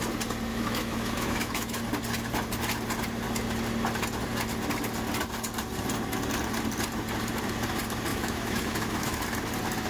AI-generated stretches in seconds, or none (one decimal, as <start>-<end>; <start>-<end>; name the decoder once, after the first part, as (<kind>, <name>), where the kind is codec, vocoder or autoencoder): 0.5-1.8 (autoencoder, DAC-VAE); 8.1-9.2